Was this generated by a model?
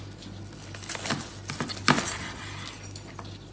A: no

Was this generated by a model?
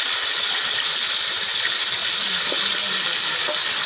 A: no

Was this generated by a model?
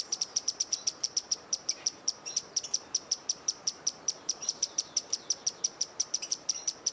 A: yes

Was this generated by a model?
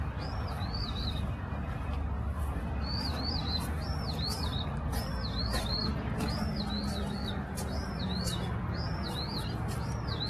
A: no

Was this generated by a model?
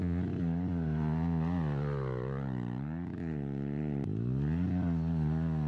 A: no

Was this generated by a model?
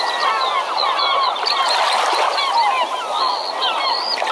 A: no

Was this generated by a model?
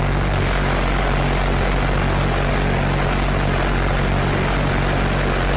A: no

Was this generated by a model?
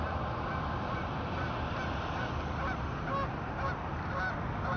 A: no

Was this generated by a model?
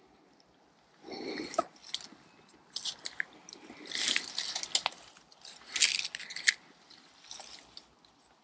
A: no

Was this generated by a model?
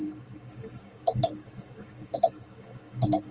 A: yes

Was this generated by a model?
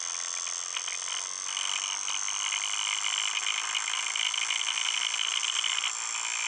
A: no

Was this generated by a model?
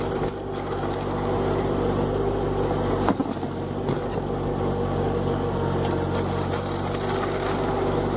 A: no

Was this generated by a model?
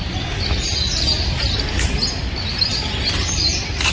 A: no